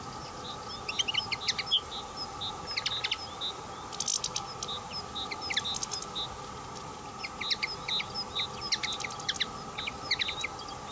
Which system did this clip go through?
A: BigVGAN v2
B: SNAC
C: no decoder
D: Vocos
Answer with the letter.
C